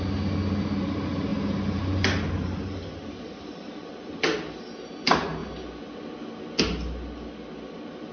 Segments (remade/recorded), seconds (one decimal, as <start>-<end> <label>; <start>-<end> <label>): 0.0-1.3 recorded; 1.3-4.1 remade; 4.1-8.1 recorded